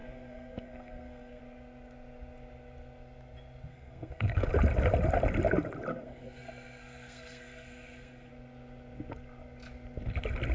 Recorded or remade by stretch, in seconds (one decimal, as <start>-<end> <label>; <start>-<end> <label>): 0.0-1.4 remade; 1.4-3.7 recorded; 3.7-4.5 remade; 4.5-5.9 recorded; 5.9-8.3 remade; 8.3-10.5 recorded